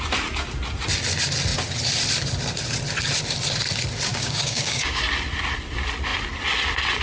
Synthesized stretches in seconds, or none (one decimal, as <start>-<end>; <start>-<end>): 4.1-5.0